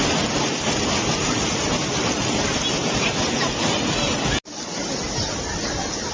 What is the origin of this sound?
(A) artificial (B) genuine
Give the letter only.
B